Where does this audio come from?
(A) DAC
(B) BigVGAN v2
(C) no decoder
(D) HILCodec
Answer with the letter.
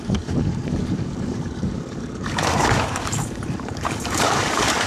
A